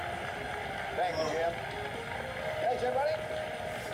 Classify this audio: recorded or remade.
recorded